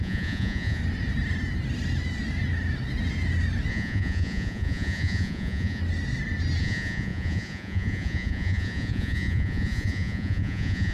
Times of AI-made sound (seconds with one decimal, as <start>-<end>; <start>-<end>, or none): 0.0-0.8; 3.7-5.8; 6.6-10.9